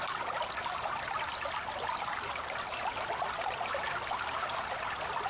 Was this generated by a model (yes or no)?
no